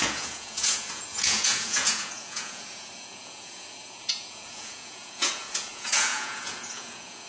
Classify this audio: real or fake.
fake